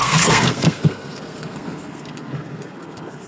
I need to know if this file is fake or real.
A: fake